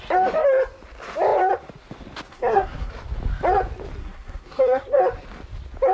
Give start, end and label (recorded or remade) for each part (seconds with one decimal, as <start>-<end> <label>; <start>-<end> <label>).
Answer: 0.0-2.3 recorded; 2.3-2.9 remade; 2.9-4.0 recorded; 4.0-5.0 remade; 5.0-5.9 recorded

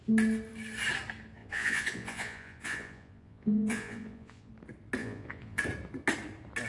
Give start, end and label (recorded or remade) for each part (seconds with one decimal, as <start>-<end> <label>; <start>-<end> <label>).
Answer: 0.0-1.4 recorded; 1.4-4.5 remade; 4.5-5.0 recorded; 5.0-5.6 remade; 5.6-6.7 recorded

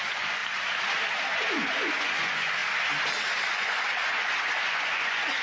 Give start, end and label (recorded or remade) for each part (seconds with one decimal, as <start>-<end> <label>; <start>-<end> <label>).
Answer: 0.0-0.4 remade; 0.4-1.9 recorded; 1.9-2.6 remade; 2.6-3.5 recorded; 3.5-5.4 remade

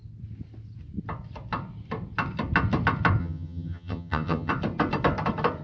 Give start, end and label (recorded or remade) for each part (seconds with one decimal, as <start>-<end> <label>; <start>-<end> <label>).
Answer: 0.0-3.2 recorded; 3.2-4.5 remade; 4.5-5.6 recorded

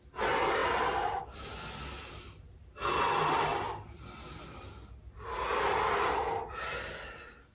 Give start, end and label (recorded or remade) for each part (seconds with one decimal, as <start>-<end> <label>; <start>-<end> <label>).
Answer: 0.0-3.5 recorded; 3.5-4.7 remade; 4.7-7.5 recorded

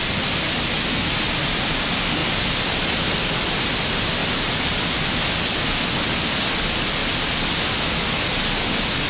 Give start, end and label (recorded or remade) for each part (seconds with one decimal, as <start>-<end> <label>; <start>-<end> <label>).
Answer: 0.0-4.2 recorded; 4.2-4.8 remade; 4.8-7.0 recorded; 7.0-7.9 remade; 7.9-9.1 recorded